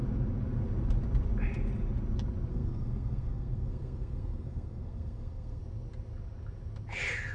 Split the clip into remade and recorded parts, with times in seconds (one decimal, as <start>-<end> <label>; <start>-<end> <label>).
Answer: 0.0-2.5 recorded; 2.5-5.6 remade; 5.6-7.3 recorded